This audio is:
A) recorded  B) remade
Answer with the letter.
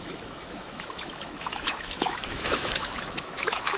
B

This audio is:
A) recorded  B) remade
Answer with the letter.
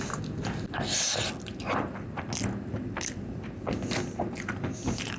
A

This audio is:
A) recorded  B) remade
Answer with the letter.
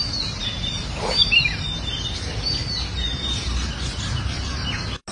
A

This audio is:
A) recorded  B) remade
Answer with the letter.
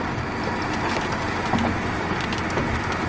A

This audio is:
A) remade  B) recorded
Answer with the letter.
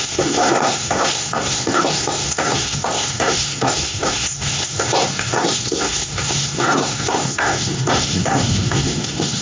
A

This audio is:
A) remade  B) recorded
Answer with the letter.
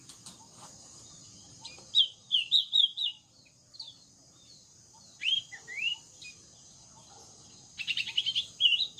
B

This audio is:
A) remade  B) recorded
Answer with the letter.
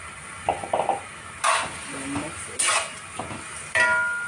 B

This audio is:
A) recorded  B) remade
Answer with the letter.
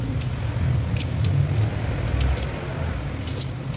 A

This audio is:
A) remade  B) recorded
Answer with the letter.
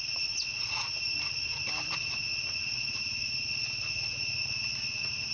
B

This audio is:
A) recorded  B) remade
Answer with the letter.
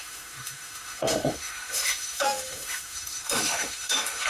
B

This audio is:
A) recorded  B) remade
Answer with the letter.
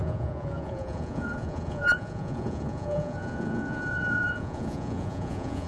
B